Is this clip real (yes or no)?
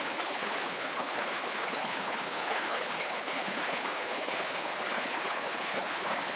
no